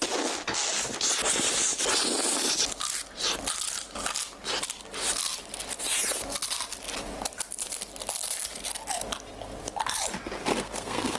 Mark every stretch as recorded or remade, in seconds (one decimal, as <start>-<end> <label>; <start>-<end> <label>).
0.0-10.5 recorded; 10.5-11.2 remade